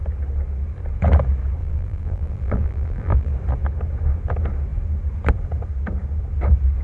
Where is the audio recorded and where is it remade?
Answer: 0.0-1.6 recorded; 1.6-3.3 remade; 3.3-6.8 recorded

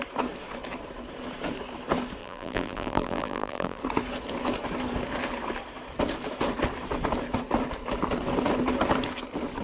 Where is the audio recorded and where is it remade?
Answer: 0.0-2.2 recorded; 2.2-3.8 remade; 3.8-9.6 recorded